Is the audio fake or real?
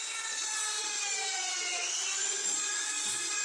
fake